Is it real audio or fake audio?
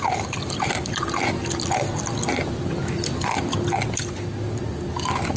real